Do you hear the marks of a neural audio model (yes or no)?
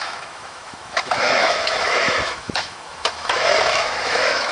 yes